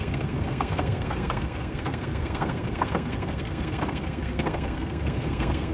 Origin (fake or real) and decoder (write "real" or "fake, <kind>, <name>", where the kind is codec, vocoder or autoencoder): fake, codec, SNAC